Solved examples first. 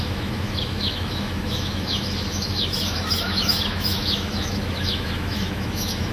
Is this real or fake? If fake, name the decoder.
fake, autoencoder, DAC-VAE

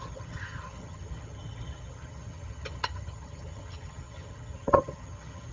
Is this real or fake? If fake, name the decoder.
fake, vocoder, HiFi-GAN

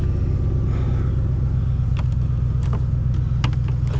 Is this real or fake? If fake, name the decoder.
real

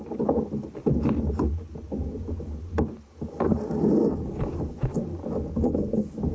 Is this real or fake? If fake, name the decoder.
real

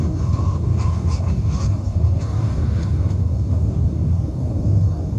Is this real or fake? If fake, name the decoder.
fake, codec, DAC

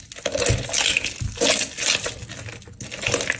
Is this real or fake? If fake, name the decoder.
real